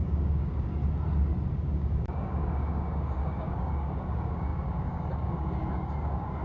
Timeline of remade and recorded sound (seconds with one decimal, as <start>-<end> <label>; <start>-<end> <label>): 0.0-0.8 remade; 0.8-1.5 recorded; 1.5-6.4 remade